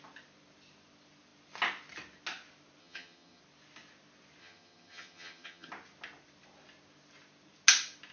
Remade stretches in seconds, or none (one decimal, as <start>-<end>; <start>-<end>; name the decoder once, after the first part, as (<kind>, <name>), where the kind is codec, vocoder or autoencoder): 2.8-3.4 (vocoder, HiFi-GAN); 4.4-5.7